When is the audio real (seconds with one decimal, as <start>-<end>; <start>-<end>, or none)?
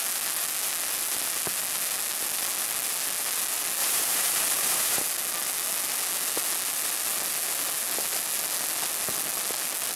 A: 0.0-3.8; 5.0-10.0